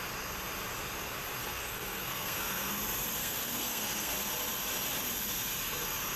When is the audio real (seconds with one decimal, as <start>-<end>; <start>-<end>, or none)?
0.0-1.4; 2.7-3.2; 4.1-6.2